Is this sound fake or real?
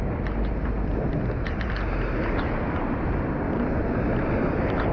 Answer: real